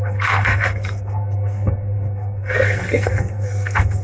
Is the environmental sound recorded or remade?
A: remade